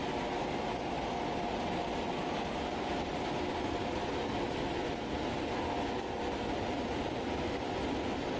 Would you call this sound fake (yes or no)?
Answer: no